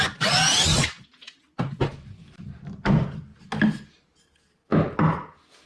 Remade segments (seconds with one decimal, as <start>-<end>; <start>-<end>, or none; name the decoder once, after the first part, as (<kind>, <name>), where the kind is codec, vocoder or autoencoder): none